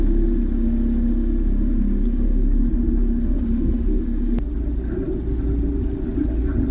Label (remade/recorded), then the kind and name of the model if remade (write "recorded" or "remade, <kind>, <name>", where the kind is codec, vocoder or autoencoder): recorded